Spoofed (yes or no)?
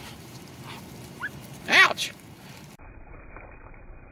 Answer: yes